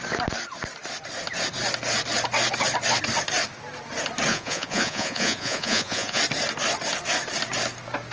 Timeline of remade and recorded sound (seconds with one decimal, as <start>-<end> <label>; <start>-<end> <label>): 0.0-4.3 recorded; 4.3-6.2 remade; 6.2-8.1 recorded